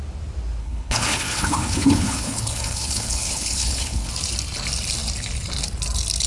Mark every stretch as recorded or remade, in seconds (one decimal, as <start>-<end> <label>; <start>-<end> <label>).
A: 0.0-0.6 recorded; 0.6-4.1 remade; 4.1-6.3 recorded

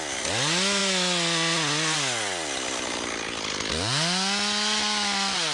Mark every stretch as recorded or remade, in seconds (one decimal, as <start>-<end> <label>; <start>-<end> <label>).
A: 0.0-5.5 recorded

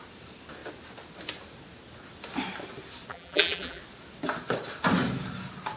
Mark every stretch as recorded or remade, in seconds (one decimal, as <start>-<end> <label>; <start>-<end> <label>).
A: 0.0-3.1 recorded; 3.1-3.8 remade; 3.8-5.8 recorded

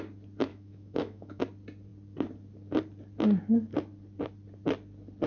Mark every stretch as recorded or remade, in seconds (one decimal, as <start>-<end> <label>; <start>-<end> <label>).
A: 0.0-0.5 recorded; 0.5-1.4 remade; 1.4-5.3 recorded

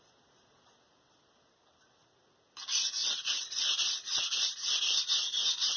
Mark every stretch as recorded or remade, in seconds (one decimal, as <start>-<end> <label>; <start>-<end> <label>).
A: 0.0-5.8 recorded